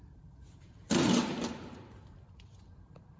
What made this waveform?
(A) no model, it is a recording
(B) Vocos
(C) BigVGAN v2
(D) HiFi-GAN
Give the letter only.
C